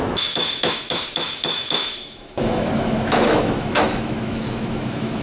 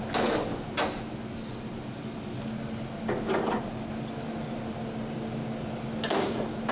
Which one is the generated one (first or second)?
first